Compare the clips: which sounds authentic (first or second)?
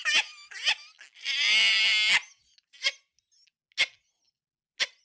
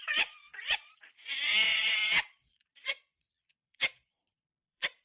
first